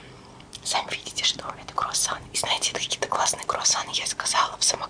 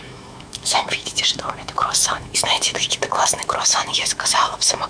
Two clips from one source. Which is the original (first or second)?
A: first